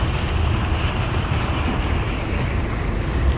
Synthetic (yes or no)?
no